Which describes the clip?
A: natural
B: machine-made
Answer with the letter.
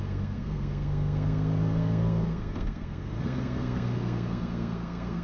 B